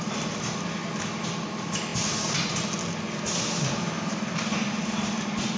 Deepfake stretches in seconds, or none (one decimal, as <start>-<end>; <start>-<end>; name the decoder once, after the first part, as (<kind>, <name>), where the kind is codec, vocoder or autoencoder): none